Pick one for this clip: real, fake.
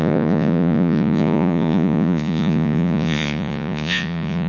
fake